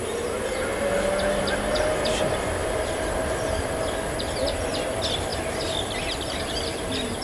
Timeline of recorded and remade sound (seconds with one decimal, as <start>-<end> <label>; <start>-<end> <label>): 0.0-7.2 recorded